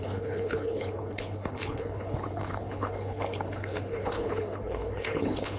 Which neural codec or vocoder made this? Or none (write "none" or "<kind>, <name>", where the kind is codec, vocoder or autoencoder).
codec, HILCodec